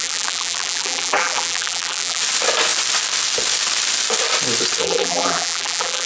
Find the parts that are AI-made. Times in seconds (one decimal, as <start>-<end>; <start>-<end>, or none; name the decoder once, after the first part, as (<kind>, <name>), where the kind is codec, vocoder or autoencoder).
0.0-2.2 (vocoder, BigVGAN v2); 4.8-6.1